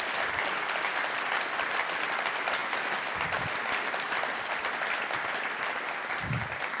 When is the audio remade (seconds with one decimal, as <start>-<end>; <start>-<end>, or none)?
none